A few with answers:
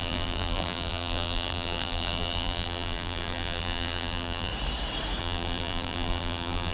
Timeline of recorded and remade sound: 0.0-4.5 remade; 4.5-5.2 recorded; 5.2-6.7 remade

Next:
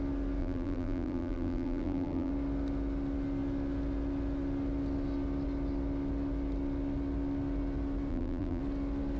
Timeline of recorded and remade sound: 0.0-0.4 recorded; 0.4-2.3 remade; 2.3-8.1 recorded; 8.1-8.6 remade; 8.6-9.2 recorded

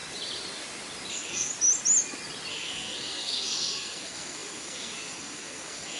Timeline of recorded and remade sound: 0.0-1.1 recorded; 1.1-1.5 remade; 1.5-2.5 recorded; 2.5-6.0 remade

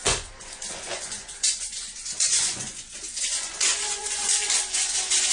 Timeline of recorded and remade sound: 0.0-5.3 remade

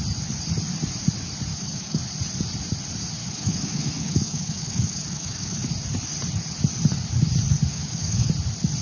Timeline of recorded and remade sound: 0.0-1.5 recorded; 1.5-2.0 remade; 2.0-3.2 recorded; 3.2-5.7 remade; 5.7-7.7 recorded; 7.7-8.3 remade; 8.3-8.8 recorded

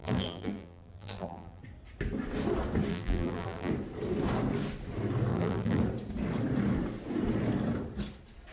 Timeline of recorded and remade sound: 0.0-1.6 remade; 1.6-2.9 recorded; 2.9-3.7 remade; 3.7-5.3 recorded; 5.3-5.8 remade; 5.8-8.5 recorded

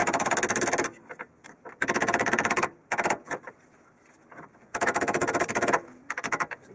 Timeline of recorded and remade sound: 0.0-6.7 recorded

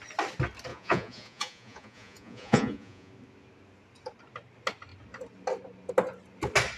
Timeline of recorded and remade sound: 0.0-0.7 recorded; 0.7-3.1 remade; 3.1-6.8 recorded